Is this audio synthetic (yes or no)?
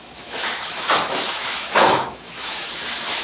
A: yes